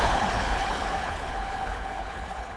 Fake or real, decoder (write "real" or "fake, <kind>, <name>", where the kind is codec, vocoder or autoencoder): fake, codec, HILCodec